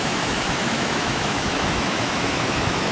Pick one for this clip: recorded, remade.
remade